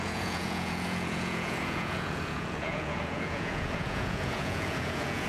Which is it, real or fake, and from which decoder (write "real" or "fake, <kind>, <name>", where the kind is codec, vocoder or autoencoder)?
fake, vocoder, Vocos